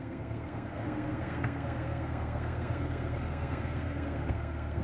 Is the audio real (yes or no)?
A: no